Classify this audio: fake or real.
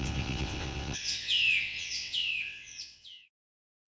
fake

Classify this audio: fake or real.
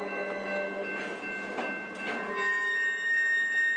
real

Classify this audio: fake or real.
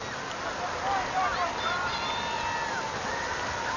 real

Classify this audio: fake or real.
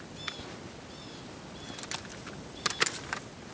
real